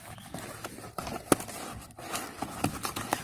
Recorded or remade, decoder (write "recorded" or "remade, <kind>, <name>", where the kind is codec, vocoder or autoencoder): recorded